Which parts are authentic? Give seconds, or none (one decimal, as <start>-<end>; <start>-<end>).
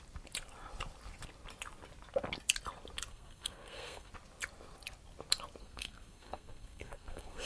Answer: 0.0-3.1; 4.1-5.6